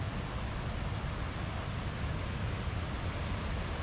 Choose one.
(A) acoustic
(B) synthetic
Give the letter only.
A